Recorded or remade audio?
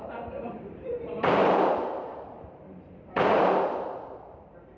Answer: remade